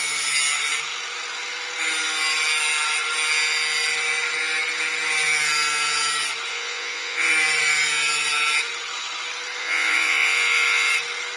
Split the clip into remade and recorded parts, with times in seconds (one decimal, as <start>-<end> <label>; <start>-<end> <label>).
0.0-6.5 recorded; 6.5-7.3 remade; 7.3-9.6 recorded; 9.6-10.9 remade; 10.9-11.4 recorded

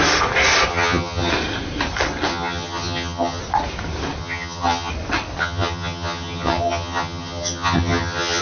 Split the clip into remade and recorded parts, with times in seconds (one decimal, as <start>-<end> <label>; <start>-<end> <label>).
0.0-0.7 recorded; 0.7-1.3 remade; 1.3-2.3 recorded; 2.3-3.4 remade; 3.4-4.2 recorded; 4.2-4.9 remade; 4.9-5.4 recorded; 5.4-8.4 remade

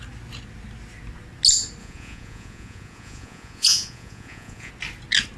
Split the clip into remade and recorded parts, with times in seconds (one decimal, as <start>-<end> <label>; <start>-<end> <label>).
0.0-1.8 recorded; 1.8-4.7 remade; 4.7-5.4 recorded

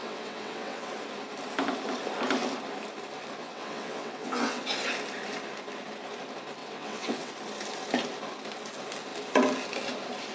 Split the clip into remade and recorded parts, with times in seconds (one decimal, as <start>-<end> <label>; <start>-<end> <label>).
0.0-0.9 remade; 0.9-3.4 recorded; 3.4-4.6 remade; 4.6-6.6 recorded; 6.6-7.3 remade; 7.3-10.3 recorded

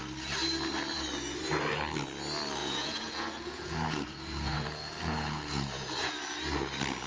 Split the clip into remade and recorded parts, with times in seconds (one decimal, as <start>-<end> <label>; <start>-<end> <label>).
0.0-2.6 recorded; 2.6-6.1 remade; 6.1-7.1 recorded

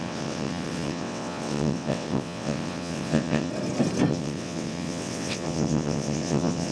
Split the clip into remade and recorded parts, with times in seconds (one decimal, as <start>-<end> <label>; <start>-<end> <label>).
0.0-3.5 remade; 3.5-4.1 recorded; 4.1-6.7 remade

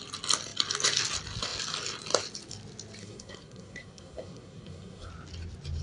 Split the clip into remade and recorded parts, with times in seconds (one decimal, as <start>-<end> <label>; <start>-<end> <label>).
0.0-3.0 recorded; 3.0-5.1 remade; 5.1-5.8 recorded

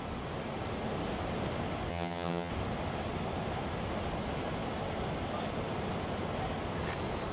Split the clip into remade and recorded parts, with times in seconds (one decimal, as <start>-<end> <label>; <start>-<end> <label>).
0.0-1.9 recorded; 1.9-2.5 remade; 2.5-7.3 recorded